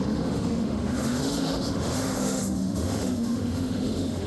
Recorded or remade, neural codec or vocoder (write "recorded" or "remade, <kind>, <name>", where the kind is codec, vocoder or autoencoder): remade, autoencoder, DAC-VAE